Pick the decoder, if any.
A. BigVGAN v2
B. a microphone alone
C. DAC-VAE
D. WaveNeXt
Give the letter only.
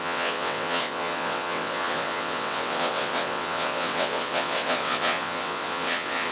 D